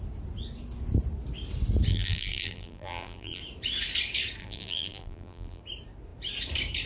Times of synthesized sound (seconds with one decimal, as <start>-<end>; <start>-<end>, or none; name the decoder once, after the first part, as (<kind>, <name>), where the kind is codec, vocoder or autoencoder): 1.9-3.4 (vocoder, BigVGAN v2); 4.4-5.6